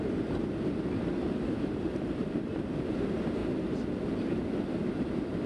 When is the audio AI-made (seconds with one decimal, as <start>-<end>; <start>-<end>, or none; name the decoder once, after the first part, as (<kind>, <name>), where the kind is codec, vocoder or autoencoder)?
0.0-3.4 (vocoder, BigVGAN v2); 4.1-5.5